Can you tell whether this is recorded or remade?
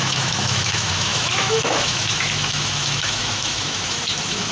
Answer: remade